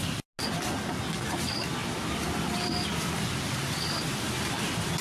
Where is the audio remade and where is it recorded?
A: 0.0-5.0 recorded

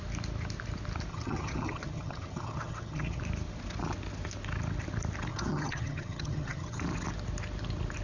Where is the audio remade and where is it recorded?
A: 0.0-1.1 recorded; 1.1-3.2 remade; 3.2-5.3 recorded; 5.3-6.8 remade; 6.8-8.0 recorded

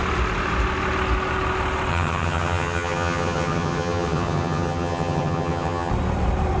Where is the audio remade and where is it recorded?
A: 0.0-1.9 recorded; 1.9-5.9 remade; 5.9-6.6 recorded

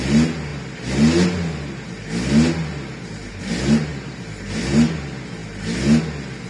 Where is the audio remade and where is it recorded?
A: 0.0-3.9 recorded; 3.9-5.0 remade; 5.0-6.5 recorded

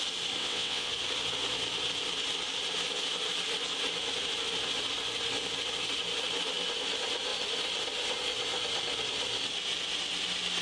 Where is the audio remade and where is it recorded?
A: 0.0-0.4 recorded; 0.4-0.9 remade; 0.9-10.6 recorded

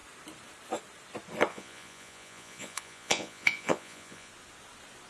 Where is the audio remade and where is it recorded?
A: 0.0-1.5 recorded; 1.5-4.3 remade; 4.3-5.1 recorded

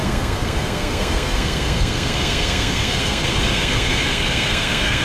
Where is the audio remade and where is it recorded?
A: 0.0-5.0 remade

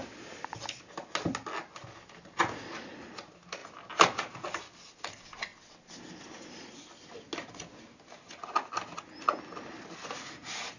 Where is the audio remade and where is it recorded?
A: 0.0-10.8 recorded